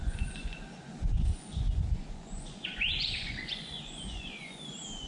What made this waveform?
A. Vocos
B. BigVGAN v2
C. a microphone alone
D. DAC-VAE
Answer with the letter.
A